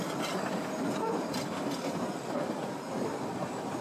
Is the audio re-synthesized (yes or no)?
no